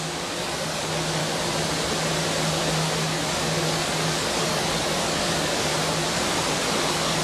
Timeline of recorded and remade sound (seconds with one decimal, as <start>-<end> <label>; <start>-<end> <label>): 0.0-1.2 remade; 1.2-3.3 recorded; 3.3-5.7 remade; 5.7-6.8 recorded; 6.8-7.2 remade